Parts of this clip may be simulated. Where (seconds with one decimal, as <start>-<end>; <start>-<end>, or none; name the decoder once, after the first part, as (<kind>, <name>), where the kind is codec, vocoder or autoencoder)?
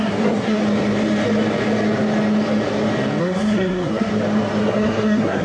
0.0-0.6 (codec, SNAC); 3.2-4.1; 4.6-5.4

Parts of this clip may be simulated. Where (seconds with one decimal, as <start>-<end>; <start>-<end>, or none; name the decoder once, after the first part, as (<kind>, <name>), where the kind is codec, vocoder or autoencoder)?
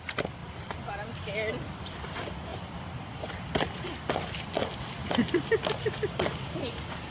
0.4-0.9 (vocoder, BigVGAN v2); 2.5-4.3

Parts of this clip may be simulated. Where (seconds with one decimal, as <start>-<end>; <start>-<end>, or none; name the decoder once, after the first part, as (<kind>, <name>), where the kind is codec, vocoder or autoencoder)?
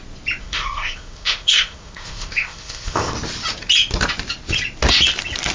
0.4-3.1 (codec, ZipCodec)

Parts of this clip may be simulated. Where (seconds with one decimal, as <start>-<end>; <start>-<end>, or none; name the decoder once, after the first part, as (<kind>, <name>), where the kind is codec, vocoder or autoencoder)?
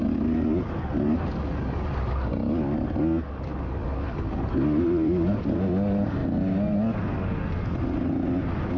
3.5-5.6 (vocoder, BigVGAN v2)